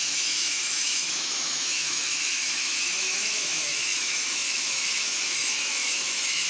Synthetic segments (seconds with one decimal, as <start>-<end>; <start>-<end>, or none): 0.0-6.5